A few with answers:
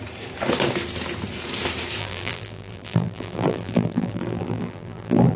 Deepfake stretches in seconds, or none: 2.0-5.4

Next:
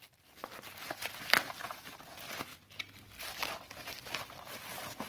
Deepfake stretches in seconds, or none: 0.4-1.1

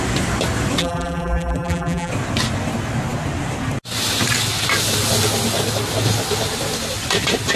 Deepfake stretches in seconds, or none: 0.8-2.1

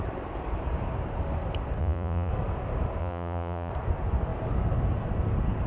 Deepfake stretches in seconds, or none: 1.8-2.3; 3.0-3.7

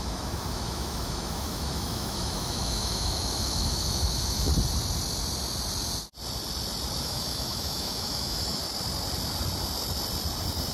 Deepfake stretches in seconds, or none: 0.0-4.5; 7.0-8.6

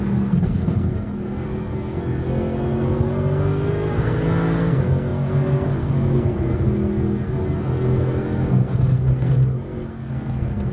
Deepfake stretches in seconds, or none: 0.0-10.7